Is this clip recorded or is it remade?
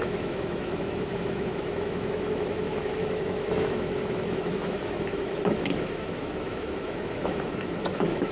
remade